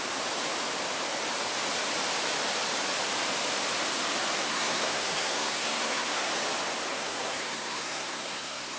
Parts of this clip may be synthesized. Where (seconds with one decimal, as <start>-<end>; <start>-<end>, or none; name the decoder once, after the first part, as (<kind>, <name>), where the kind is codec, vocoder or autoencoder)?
4.4-6.3 (codec, SNAC); 6.9-8.8